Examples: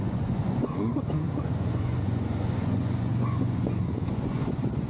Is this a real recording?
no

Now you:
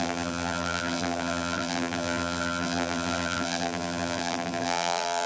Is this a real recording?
no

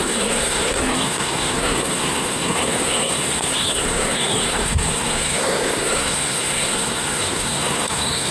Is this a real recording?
no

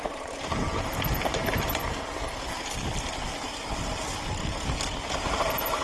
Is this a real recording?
yes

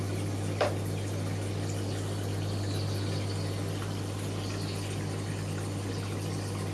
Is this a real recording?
yes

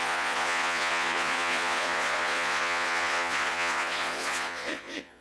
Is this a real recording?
no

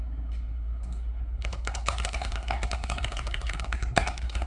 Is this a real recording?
no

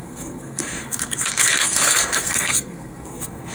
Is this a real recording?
no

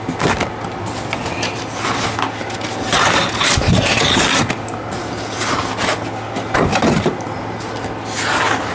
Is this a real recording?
yes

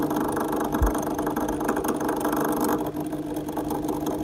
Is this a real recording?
yes